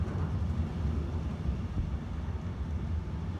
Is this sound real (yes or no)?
yes